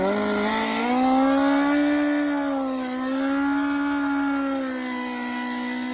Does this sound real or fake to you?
real